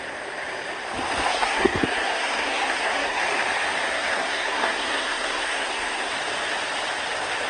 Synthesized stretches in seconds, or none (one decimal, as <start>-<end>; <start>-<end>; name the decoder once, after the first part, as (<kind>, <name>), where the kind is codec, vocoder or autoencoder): 1.3-3.2 (codec, SNAC); 3.9-6.1